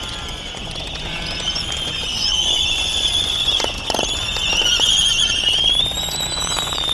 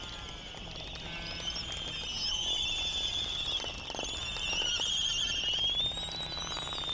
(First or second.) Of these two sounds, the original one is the second